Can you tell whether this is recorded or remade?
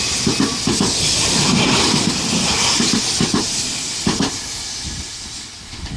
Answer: recorded